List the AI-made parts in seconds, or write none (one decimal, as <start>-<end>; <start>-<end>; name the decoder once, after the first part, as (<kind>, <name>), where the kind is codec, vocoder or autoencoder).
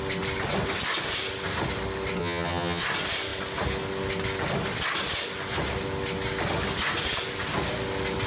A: 2.2-2.8 (vocoder, HiFi-GAN)